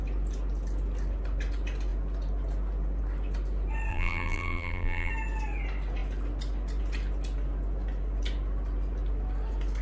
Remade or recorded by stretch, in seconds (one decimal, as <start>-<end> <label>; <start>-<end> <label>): 0.0-3.9 recorded; 3.9-5.1 remade; 5.1-9.8 recorded